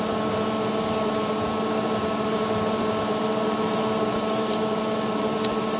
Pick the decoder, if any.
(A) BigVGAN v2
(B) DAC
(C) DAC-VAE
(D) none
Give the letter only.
A